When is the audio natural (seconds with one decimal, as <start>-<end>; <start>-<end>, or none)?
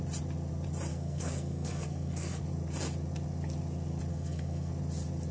0.0-0.9; 2.4-4.1; 4.7-5.3